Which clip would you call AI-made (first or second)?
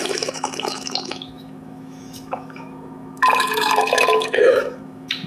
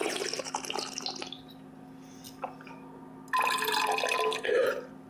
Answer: first